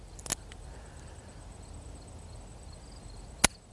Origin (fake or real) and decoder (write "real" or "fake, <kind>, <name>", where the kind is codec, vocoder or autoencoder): real